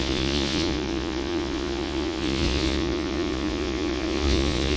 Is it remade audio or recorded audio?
remade